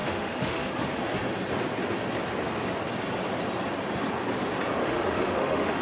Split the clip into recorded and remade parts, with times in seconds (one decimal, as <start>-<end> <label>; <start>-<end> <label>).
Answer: 0.0-1.0 remade; 1.0-4.8 recorded; 4.8-5.8 remade